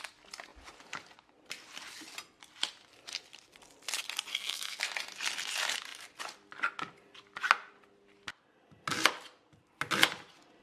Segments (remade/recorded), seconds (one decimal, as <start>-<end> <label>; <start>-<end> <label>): 0.0-4.3 recorded; 4.3-4.8 remade; 4.8-10.6 recorded